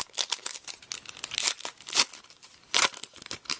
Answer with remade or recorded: recorded